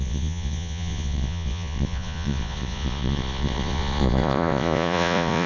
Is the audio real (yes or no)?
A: no